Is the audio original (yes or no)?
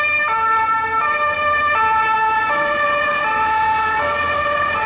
yes